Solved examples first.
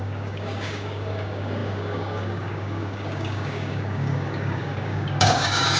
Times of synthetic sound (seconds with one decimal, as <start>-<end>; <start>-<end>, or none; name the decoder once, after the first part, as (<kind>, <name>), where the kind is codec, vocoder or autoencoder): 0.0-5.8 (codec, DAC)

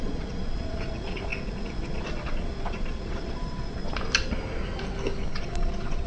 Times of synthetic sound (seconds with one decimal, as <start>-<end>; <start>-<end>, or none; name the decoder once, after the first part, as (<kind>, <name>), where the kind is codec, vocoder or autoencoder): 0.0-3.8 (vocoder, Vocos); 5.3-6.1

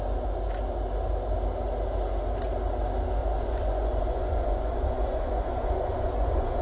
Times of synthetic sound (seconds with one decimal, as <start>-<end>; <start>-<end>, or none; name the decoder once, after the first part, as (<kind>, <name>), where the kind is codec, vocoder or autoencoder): 3.2-6.6 (vocoder, Vocos)

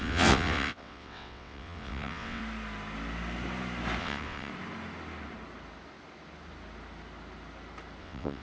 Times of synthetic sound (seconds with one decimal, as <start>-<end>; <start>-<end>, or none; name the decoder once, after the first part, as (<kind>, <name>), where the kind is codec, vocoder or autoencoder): 0.0-2.4 (vocoder, WaveNeXt); 4.0-4.5; 8.0-8.4

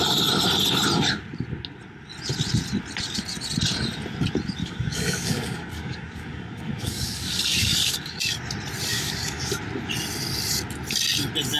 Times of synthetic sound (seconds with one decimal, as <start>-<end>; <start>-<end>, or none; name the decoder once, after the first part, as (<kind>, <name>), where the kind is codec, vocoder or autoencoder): 4.6-8.2 (codec, DAC); 8.9-9.6

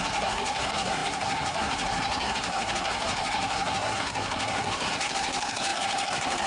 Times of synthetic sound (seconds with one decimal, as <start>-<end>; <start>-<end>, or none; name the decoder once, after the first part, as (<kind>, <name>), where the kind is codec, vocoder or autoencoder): 0.0-6.5 (codec, SNAC)